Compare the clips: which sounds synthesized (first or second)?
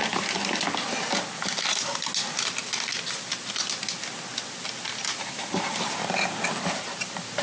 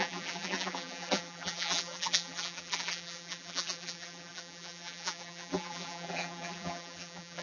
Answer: second